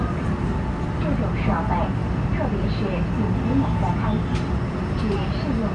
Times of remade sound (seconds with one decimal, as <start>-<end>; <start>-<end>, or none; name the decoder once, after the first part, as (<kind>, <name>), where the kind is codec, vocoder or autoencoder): none